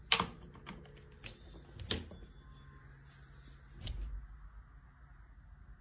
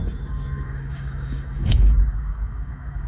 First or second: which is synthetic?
second